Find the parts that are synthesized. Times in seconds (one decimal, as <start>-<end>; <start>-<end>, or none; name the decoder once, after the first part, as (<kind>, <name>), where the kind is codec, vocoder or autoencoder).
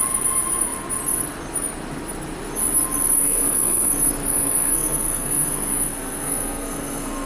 3.2-3.9 (codec, SNAC); 4.3-7.3